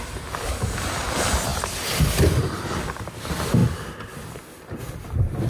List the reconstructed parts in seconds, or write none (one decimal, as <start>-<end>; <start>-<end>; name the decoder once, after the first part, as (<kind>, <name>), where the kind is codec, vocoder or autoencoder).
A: 1.5-2.6 (vocoder, BigVGAN v2)